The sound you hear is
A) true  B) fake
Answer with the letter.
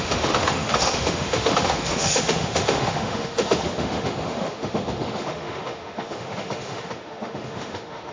B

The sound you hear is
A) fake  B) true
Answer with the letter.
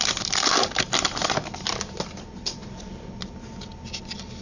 B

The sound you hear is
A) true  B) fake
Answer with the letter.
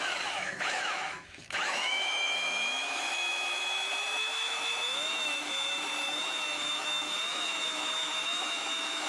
B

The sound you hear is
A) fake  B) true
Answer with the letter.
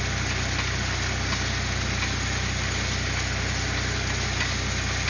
B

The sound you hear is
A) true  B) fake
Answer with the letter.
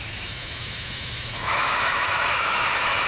B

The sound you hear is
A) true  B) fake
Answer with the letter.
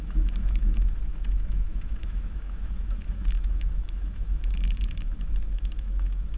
B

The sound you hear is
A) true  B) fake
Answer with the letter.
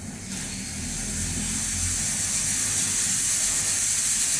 A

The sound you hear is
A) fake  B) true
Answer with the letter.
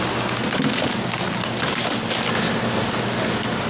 B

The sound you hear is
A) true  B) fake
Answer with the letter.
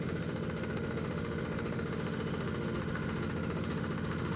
B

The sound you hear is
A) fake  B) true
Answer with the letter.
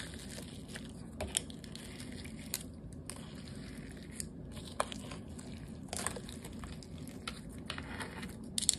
B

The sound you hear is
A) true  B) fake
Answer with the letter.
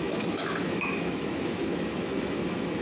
B